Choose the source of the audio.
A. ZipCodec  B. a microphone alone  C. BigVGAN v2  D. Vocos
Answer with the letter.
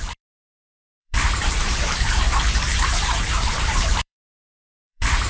C